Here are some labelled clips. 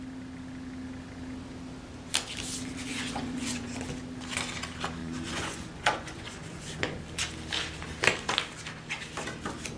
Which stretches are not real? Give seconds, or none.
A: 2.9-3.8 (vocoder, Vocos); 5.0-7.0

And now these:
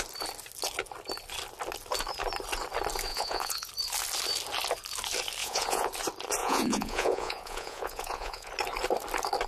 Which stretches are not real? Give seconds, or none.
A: 3.1-3.7 (vocoder, Vocos); 5.4-5.9; 6.4-8.5

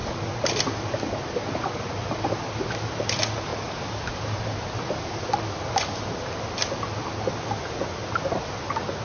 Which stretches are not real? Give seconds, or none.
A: none

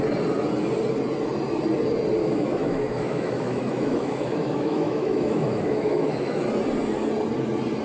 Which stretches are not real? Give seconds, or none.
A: 2.2-6.5 (autoencoder, DAC-VAE)

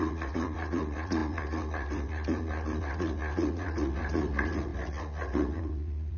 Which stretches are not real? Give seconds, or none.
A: 0.0-6.2 (vocoder, Vocos)

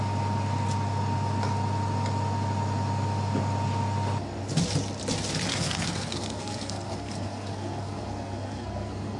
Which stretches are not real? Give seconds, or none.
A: 5.5-9.2 (codec, SNAC)

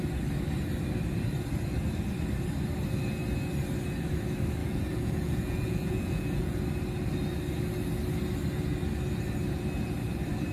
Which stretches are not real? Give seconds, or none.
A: 4.6-6.6 (vocoder, Vocos)